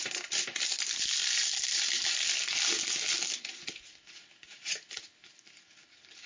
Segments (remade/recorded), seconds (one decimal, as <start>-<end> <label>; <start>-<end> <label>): 0.0-6.3 recorded